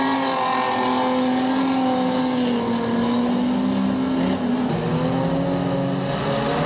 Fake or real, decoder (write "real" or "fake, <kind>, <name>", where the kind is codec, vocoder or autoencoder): real